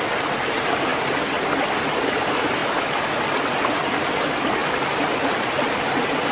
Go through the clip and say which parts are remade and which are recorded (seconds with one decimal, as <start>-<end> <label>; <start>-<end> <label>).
0.0-6.3 recorded